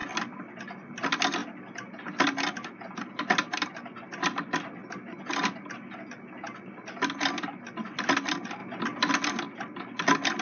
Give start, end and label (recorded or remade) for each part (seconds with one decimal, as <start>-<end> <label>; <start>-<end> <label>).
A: 0.0-10.4 recorded